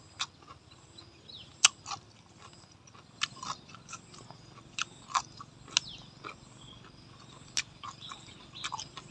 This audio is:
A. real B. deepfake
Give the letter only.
A